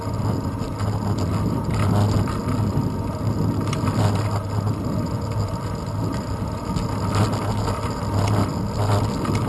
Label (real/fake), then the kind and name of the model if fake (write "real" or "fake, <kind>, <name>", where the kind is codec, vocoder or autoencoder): real